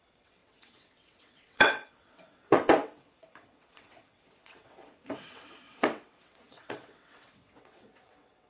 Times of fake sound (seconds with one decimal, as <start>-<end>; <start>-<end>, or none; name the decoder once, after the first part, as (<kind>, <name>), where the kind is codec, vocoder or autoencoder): 0.0-8.5 (vocoder, WaveNeXt)